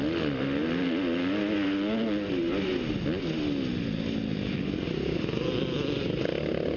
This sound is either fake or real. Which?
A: real